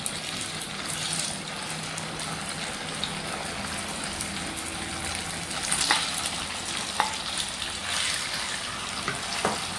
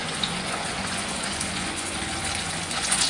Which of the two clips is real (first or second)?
first